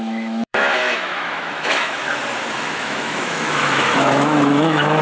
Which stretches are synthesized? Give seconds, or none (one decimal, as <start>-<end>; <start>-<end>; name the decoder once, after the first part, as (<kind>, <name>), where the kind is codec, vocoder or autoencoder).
0.0-2.0 (autoencoder, DAC-VAE); 2.5-5.0